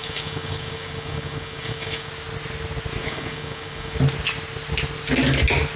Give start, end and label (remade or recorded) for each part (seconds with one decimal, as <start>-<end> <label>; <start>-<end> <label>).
0.0-2.1 remade; 2.1-3.0 recorded; 3.0-4.0 remade; 4.0-5.8 recorded